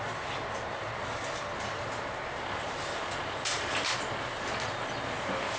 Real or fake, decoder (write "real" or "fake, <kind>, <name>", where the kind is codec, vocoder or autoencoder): real